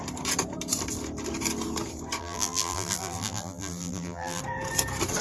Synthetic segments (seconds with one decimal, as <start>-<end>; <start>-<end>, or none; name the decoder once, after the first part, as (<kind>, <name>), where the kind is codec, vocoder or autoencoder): 2.2-4.4 (vocoder, BigVGAN v2)